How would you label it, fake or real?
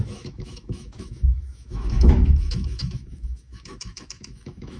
fake